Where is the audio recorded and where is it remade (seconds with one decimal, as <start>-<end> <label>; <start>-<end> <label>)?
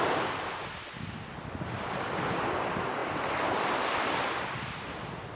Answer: 0.0-0.6 recorded; 0.6-1.4 remade; 1.4-5.3 recorded